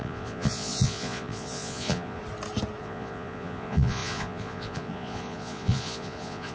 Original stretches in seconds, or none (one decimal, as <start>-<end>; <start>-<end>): 2.2-2.8